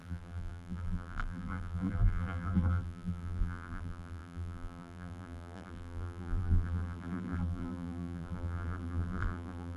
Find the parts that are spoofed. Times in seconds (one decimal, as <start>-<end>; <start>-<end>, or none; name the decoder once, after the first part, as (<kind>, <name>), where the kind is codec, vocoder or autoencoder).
0.0-9.8 (vocoder, BigVGAN v2)